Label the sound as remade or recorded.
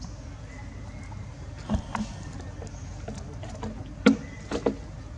recorded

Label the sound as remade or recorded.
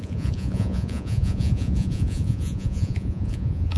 remade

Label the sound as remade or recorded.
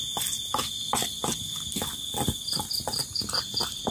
recorded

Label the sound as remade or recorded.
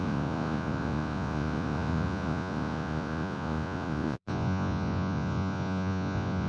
remade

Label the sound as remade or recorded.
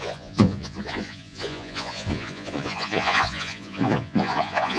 remade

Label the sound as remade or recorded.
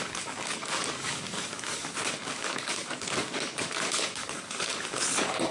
remade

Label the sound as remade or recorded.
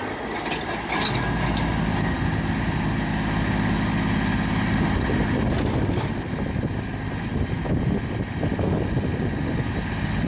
recorded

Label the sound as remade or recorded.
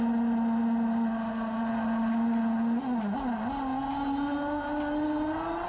recorded